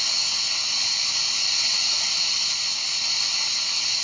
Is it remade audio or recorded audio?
recorded